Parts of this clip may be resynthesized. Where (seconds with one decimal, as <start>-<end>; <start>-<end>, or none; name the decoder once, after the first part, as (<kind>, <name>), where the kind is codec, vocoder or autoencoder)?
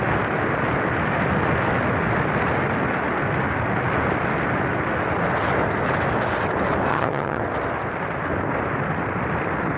6.9-7.4 (vocoder, HiFi-GAN)